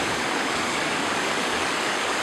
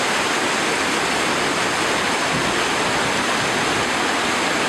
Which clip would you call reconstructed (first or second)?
first